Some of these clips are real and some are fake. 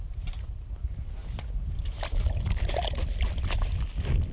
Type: real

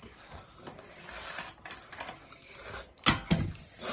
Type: real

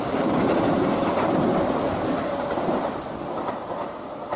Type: real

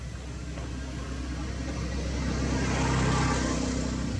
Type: real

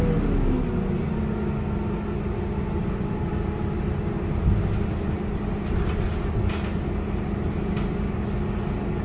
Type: real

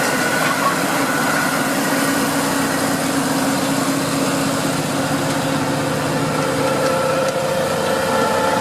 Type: real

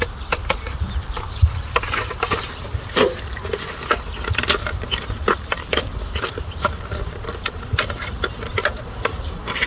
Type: fake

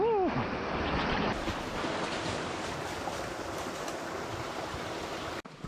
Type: real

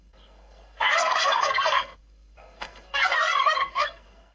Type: fake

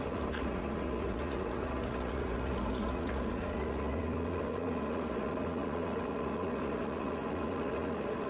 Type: fake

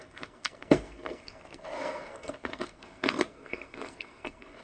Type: fake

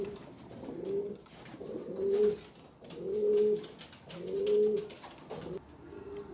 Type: real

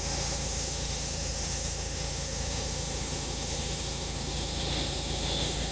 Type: fake